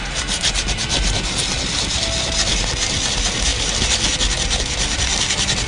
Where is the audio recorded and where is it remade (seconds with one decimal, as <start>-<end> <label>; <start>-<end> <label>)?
0.0-5.7 recorded